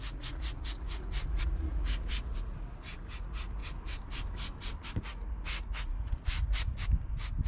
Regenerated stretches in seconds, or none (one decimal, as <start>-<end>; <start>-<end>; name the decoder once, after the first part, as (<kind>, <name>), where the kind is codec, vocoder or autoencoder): 0.0-3.6 (vocoder, Vocos); 5.0-6.7